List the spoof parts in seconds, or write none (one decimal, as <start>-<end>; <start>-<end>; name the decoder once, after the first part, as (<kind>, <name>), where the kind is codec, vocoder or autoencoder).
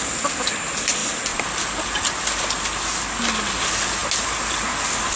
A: none